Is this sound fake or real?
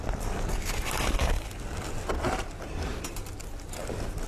real